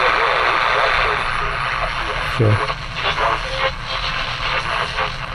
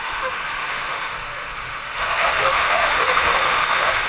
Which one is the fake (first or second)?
second